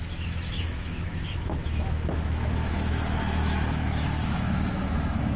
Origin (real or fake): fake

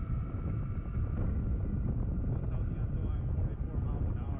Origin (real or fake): real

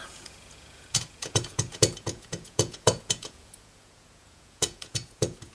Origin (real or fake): fake